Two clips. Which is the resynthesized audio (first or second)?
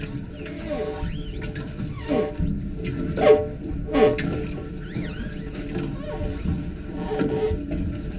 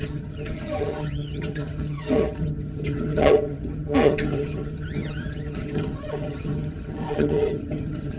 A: second